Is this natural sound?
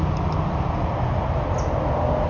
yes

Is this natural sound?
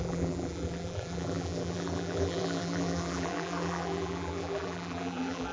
no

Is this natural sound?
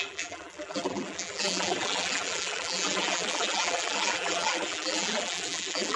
no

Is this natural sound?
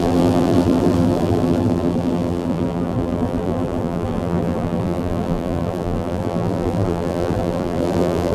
no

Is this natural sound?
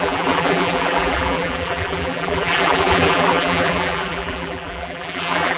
no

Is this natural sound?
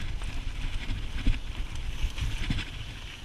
yes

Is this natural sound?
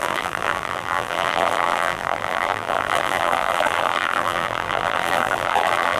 no